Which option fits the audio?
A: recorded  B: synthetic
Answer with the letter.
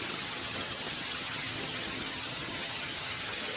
B